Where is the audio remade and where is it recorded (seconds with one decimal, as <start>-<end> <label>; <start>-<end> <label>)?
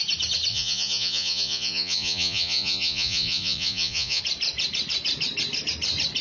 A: 0.0-0.5 recorded; 0.5-4.2 remade; 4.2-6.2 recorded